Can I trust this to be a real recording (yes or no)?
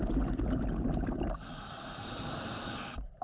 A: yes